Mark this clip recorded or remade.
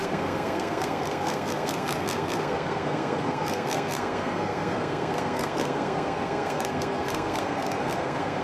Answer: remade